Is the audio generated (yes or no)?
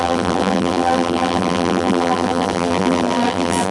yes